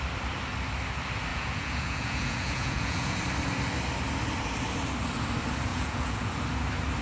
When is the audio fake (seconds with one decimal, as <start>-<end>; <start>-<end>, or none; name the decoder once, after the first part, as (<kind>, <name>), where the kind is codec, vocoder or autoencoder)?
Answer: 1.3-3.2 (vocoder, Vocos); 5.7-6.4